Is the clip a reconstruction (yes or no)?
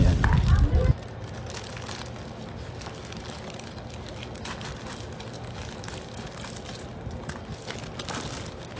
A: no